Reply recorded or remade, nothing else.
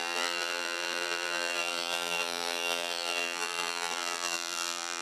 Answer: remade